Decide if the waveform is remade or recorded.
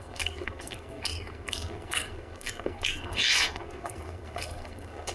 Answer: remade